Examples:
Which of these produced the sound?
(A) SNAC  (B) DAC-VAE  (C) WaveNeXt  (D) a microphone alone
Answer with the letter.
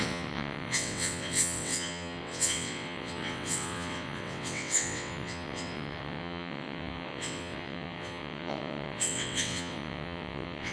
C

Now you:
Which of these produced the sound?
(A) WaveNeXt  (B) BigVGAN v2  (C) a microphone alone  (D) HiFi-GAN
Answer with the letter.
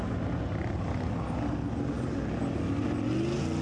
C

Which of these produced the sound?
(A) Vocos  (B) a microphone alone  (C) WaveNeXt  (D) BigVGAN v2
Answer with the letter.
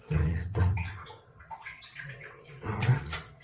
C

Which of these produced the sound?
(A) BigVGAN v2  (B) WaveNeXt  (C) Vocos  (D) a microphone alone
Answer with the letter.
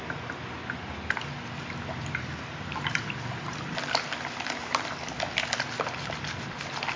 D